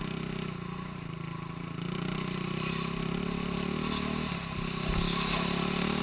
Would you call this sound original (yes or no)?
yes